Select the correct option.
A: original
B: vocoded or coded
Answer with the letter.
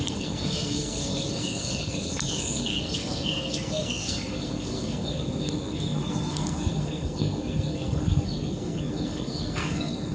B